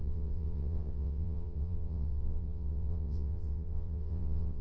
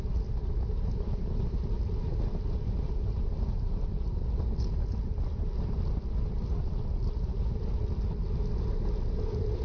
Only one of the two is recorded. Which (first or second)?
second